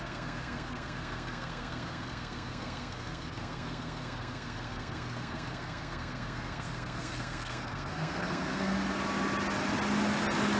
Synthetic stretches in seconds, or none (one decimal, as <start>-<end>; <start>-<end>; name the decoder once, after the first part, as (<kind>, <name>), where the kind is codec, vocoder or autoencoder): 0.0-8.7 (codec, SNAC)